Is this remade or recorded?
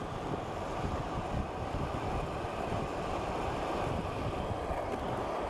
recorded